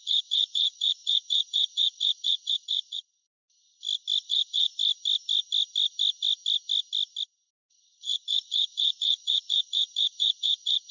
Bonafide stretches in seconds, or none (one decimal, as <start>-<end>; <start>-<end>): 3.4-4.3; 4.7-7.5